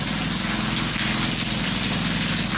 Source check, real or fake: real